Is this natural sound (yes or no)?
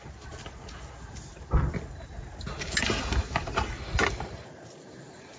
yes